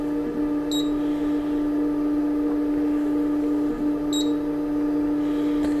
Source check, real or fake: real